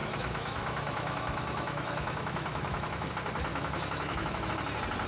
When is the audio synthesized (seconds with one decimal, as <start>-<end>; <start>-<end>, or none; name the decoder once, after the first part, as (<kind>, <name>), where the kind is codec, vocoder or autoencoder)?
0.0-3.1 (autoencoder, DAC-VAE); 3.5-4.5